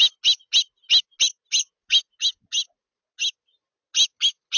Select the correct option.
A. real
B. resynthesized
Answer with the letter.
A